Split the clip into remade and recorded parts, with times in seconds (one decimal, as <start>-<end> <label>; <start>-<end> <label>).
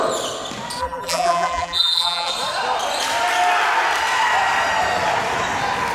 0.0-0.8 recorded; 0.8-2.3 remade; 2.3-5.9 recorded